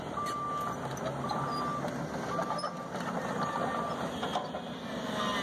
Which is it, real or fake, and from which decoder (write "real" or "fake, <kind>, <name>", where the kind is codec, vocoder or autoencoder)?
real